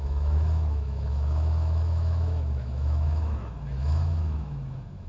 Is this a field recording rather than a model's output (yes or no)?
no